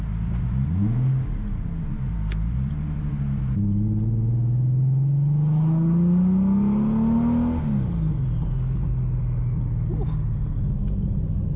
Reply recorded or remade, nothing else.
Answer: recorded